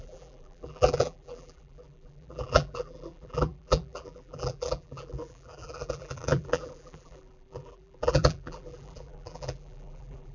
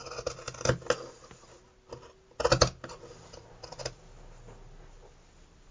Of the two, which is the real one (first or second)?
second